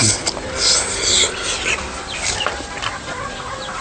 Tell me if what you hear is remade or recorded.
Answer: recorded